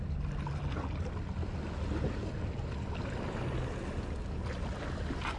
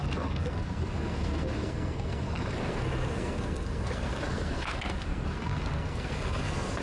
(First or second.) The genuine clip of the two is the first